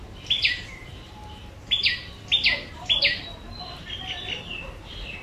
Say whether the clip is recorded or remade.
recorded